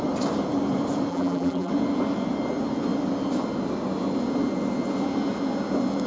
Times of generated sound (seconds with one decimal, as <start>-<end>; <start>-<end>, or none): 1.1-1.7